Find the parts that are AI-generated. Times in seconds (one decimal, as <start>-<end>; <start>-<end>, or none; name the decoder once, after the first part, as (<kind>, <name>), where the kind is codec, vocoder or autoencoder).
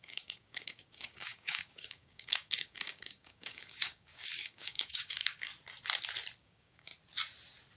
0.0-5.5 (codec, DAC); 6.4-6.9